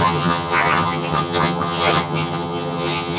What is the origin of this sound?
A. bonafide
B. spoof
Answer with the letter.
B